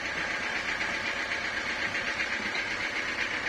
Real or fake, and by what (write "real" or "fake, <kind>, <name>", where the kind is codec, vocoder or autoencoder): real